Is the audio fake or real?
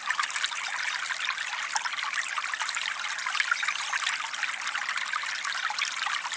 real